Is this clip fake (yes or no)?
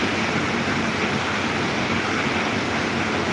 no